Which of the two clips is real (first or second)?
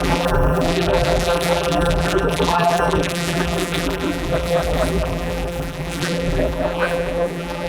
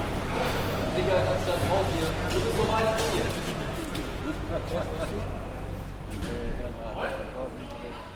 second